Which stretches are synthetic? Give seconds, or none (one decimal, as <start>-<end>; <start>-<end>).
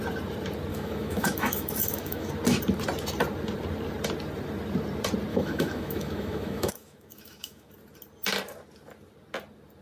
0.7-2.3; 5.3-7.7